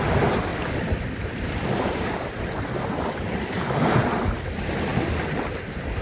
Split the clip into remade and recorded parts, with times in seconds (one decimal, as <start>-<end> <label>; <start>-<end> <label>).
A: 0.0-0.5 recorded; 0.5-2.1 remade; 2.1-6.0 recorded